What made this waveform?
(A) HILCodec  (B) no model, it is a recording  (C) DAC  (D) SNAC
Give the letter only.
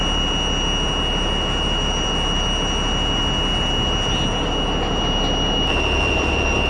B